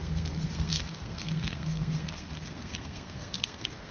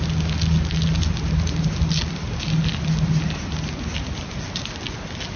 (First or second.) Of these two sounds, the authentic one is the second